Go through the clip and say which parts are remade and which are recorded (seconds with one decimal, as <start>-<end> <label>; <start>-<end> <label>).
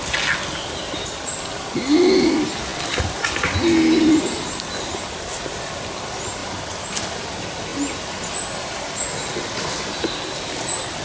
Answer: 0.0-11.0 recorded